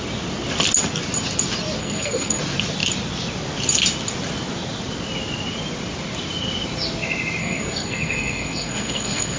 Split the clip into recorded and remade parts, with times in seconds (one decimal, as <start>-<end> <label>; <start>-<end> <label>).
0.0-1.8 recorded; 1.8-2.4 remade; 2.4-7.4 recorded; 7.4-9.4 remade

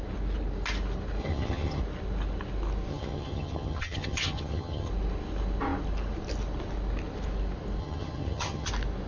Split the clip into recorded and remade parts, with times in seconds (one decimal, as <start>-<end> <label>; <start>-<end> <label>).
0.0-1.2 recorded; 1.2-1.8 remade; 1.8-2.9 recorded; 2.9-4.9 remade; 4.9-7.8 recorded; 7.8-8.7 remade; 8.7-9.1 recorded